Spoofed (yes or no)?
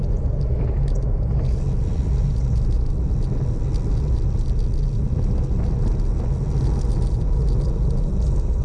no